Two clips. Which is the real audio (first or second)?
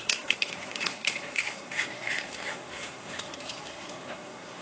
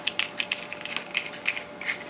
second